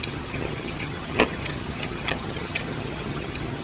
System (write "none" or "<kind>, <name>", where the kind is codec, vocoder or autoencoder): vocoder, HiFi-GAN